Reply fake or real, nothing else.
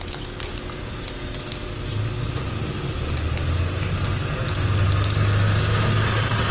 real